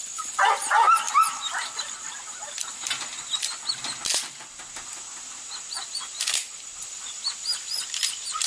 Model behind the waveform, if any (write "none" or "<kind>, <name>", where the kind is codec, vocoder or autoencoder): none